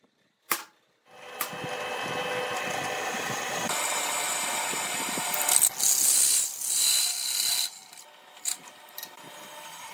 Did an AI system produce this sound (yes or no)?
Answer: no